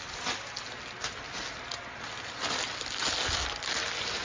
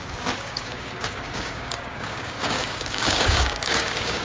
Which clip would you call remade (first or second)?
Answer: second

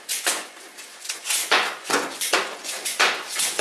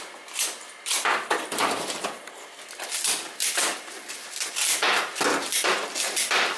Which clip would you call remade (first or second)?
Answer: first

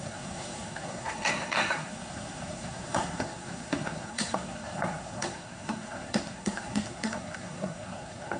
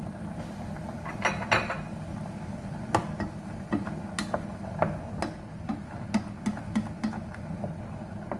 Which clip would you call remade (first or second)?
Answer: first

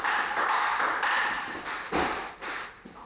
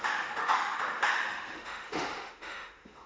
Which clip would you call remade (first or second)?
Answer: second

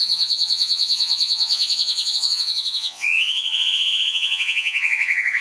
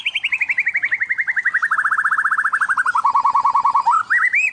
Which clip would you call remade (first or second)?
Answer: first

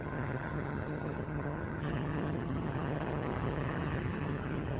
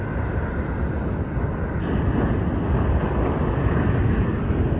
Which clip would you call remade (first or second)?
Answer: first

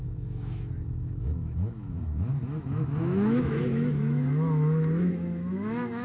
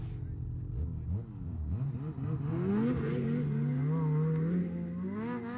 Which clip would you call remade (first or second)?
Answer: first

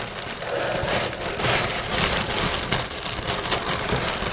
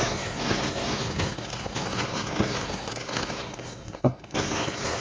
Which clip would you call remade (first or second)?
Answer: second